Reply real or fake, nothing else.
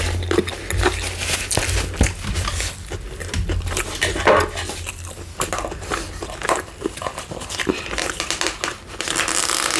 real